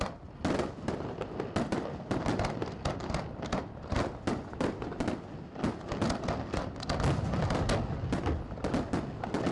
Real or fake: real